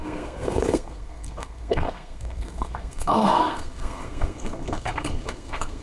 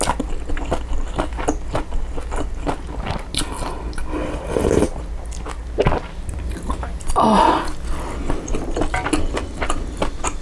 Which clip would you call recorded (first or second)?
second